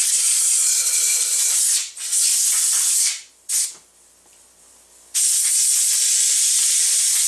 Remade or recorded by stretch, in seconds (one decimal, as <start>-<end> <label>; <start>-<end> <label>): 0.0-7.3 recorded